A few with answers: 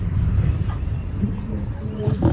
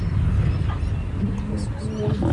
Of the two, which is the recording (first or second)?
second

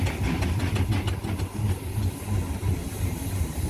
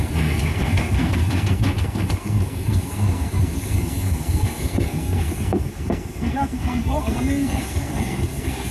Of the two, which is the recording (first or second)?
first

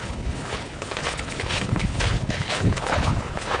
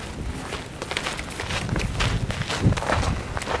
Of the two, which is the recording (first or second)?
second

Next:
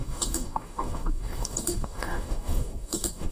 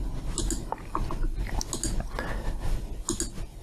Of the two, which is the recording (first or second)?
second